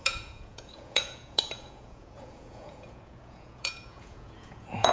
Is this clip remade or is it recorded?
remade